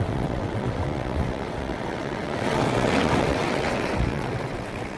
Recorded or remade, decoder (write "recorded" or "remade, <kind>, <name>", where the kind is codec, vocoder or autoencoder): remade, vocoder, WaveNeXt